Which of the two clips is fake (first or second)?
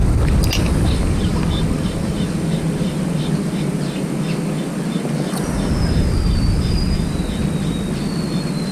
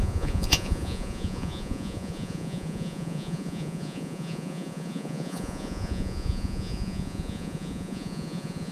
second